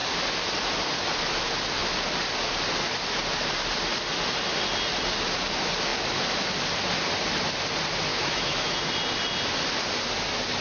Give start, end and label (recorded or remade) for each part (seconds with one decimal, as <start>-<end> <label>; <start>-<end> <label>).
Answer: 0.0-8.1 recorded; 8.1-8.8 remade; 8.8-10.6 recorded